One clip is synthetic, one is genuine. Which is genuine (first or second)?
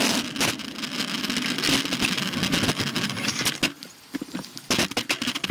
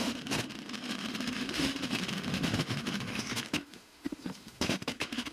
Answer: first